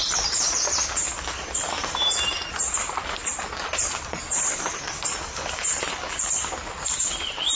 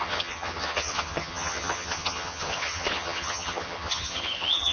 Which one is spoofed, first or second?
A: second